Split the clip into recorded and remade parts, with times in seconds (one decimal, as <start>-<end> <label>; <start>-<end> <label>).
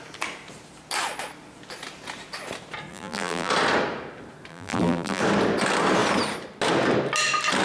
0.0-2.9 recorded; 2.9-3.5 remade; 3.5-4.5 recorded; 4.5-5.2 remade; 5.2-7.6 recorded